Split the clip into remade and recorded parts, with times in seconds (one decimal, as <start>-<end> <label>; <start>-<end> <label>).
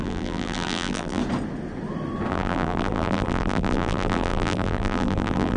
0.0-1.2 remade; 1.2-2.3 recorded; 2.3-5.6 remade